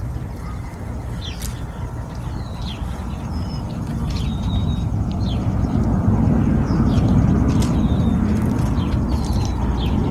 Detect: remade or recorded recorded